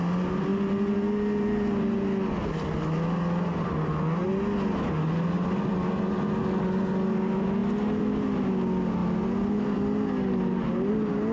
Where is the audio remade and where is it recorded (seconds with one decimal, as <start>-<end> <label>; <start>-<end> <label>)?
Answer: 0.0-11.3 recorded

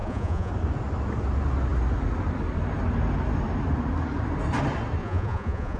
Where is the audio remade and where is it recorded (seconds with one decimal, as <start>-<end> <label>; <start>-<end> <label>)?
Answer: 0.0-0.5 remade; 0.5-5.0 recorded; 5.0-5.8 remade

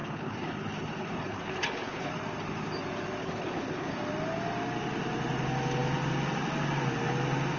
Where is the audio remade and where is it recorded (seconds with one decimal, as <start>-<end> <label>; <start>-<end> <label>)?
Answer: 0.0-2.1 remade; 2.1-3.2 recorded; 3.2-4.0 remade; 4.0-7.6 recorded

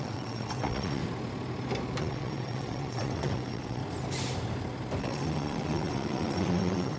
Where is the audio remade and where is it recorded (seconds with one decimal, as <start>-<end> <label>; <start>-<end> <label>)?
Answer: 0.0-1.0 remade; 1.0-2.0 recorded; 2.0-3.8 remade; 3.8-5.0 recorded; 5.0-7.0 remade

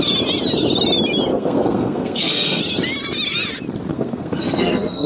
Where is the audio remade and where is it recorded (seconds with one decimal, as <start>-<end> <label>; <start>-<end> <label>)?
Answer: 0.0-1.3 recorded; 1.3-2.6 remade; 2.6-3.9 recorded; 3.9-5.1 remade

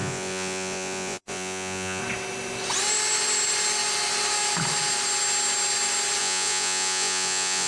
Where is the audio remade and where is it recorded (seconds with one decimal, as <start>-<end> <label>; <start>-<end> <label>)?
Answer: 0.0-2.0 remade; 2.0-6.2 recorded; 6.2-7.7 remade

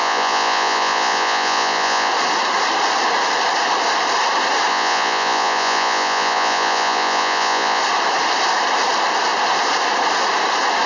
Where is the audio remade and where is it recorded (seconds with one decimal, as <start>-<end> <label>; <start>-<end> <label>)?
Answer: 0.0-2.1 remade; 2.1-4.7 recorded; 4.7-7.8 remade; 7.8-10.9 recorded

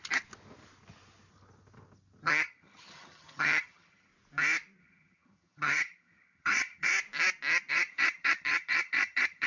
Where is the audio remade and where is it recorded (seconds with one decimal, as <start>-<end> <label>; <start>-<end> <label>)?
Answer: 0.0-2.3 recorded; 2.3-4.1 remade; 4.1-4.8 recorded; 4.8-6.9 remade; 6.9-7.7 recorded; 7.7-9.5 remade